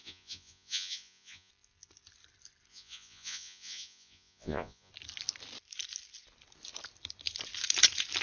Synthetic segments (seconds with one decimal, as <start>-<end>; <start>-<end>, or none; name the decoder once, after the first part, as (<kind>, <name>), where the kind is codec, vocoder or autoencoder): 0.0-1.5 (vocoder, Vocos); 2.7-4.9